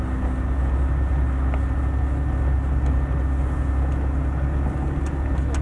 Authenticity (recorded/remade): recorded